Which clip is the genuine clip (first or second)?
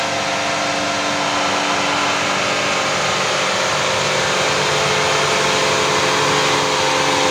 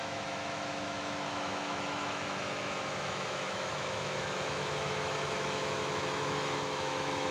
first